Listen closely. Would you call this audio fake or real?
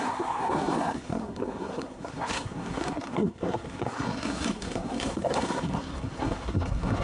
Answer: fake